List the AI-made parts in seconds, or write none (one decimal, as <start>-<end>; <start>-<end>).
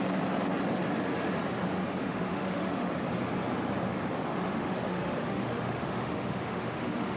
2.0-2.9; 4.3-7.2